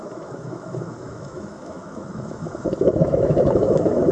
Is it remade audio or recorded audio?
remade